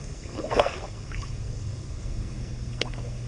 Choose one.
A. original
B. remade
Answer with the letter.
B